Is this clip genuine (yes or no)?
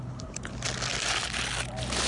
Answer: yes